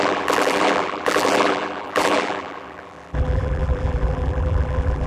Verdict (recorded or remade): remade